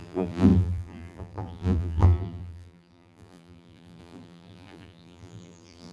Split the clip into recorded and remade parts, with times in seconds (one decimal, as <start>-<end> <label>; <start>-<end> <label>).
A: 0.0-5.9 remade